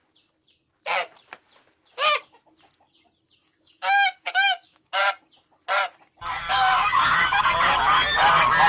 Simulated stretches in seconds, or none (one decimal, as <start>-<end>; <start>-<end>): 3.4-5.1; 6.4-7.4